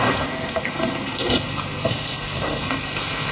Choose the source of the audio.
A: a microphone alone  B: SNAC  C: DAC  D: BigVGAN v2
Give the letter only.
B